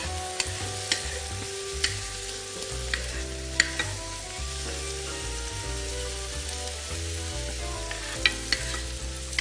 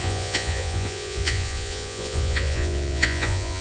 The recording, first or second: first